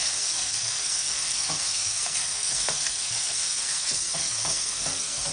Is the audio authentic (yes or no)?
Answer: no